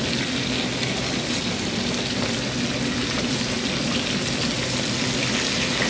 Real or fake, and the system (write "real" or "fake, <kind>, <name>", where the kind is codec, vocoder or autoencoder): real